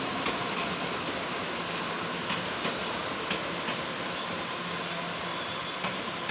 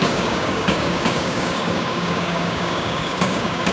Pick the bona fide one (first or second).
first